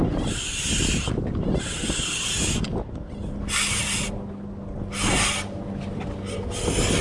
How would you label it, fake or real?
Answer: real